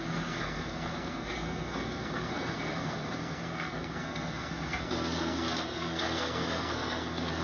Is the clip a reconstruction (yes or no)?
yes